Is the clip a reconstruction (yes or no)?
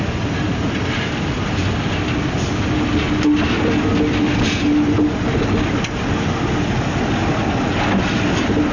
no